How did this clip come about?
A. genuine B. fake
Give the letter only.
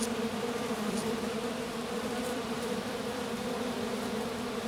B